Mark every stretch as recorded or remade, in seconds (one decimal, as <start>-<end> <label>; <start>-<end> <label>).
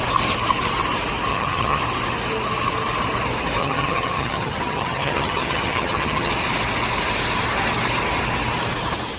0.0-1.3 recorded; 1.3-1.8 remade; 1.8-3.6 recorded; 3.6-6.3 remade; 6.3-9.2 recorded